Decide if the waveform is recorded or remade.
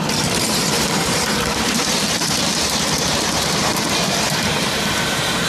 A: remade